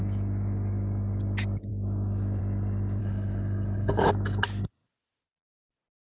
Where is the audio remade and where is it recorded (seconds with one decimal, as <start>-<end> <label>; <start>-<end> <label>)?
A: 0.0-3.0 recorded; 3.0-4.1 remade; 4.1-6.0 recorded